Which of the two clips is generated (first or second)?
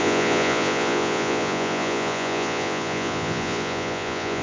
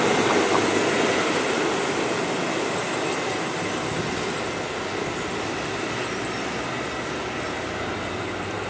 first